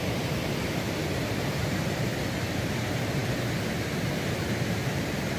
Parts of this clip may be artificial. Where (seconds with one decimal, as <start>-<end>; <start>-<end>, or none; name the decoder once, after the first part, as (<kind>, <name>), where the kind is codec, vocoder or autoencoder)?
0.0-1.0 (vocoder, BigVGAN v2); 1.6-3.2; 4.2-5.4